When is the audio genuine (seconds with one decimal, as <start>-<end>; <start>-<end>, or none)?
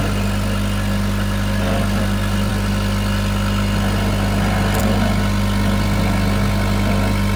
0.0-7.4